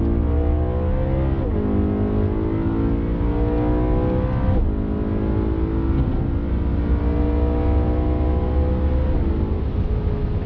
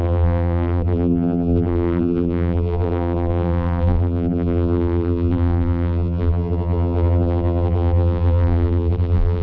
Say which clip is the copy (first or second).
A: second